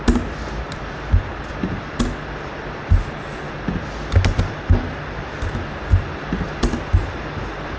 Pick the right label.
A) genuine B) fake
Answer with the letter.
A